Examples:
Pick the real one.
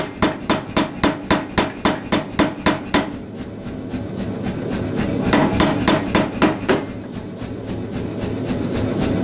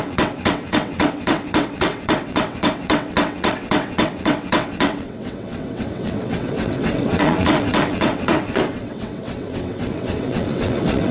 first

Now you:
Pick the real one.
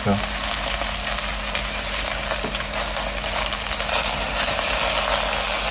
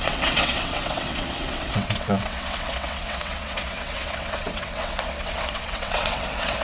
first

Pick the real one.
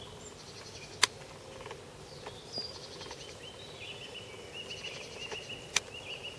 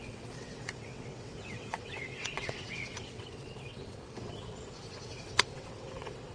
first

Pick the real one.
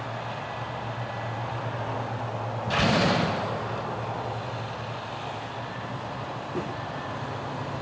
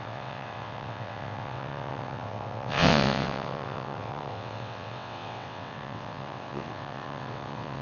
first